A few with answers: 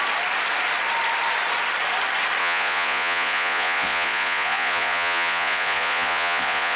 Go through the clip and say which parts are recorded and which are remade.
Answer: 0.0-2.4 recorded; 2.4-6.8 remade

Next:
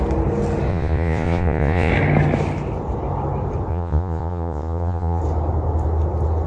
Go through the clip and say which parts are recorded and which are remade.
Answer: 0.0-0.7 recorded; 0.7-1.9 remade; 1.9-3.7 recorded; 3.7-5.2 remade; 5.2-6.5 recorded

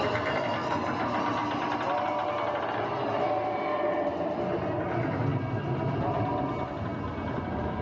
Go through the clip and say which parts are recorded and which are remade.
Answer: 0.0-7.8 recorded

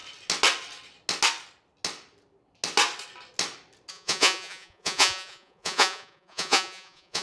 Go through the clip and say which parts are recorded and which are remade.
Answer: 0.0-3.9 recorded; 3.9-7.2 remade

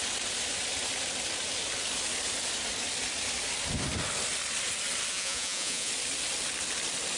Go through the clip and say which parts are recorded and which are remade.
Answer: 0.0-5.1 recorded; 5.1-5.9 remade; 5.9-7.2 recorded